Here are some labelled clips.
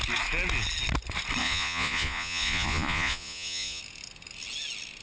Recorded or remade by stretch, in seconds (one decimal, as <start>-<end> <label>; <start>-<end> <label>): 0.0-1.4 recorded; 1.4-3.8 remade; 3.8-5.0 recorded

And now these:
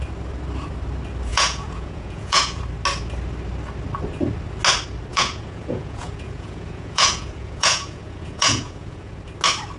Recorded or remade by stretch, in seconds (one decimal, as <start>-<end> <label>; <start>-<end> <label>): 0.0-1.3 recorded; 1.3-2.6 remade; 2.6-5.1 recorded; 5.1-9.1 remade; 9.1-9.8 recorded

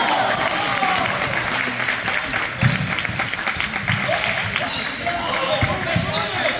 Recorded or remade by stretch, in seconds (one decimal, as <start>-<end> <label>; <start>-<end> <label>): 0.0-6.6 recorded